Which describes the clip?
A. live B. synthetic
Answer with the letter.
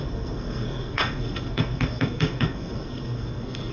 B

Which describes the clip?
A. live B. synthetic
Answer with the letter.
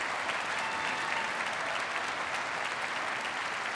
A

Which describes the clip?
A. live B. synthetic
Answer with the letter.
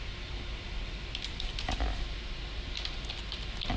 A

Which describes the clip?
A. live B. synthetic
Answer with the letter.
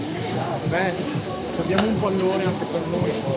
B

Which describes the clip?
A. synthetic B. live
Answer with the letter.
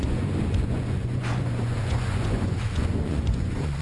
A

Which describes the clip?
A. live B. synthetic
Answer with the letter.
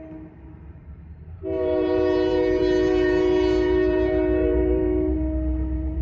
B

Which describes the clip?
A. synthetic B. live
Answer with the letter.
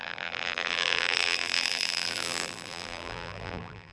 A